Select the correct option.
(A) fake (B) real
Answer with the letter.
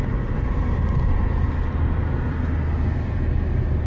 B